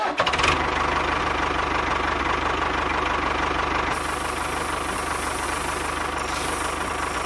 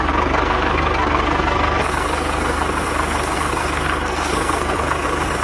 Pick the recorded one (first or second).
first